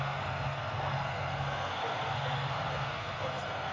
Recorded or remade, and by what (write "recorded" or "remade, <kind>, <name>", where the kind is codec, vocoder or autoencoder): remade, codec, SNAC